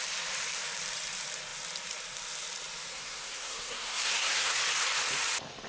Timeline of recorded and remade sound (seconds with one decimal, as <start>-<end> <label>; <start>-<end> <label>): 0.0-2.9 recorded; 2.9-4.6 remade; 4.6-5.7 recorded